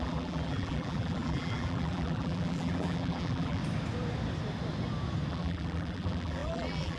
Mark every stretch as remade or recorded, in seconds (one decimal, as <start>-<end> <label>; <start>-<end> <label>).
0.0-3.6 remade; 3.6-5.3 recorded; 5.3-7.0 remade